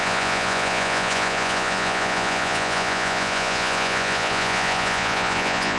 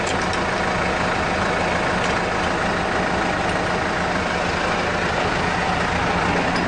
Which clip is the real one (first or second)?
second